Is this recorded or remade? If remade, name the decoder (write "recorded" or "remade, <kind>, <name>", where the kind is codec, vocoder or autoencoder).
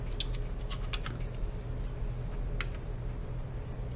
recorded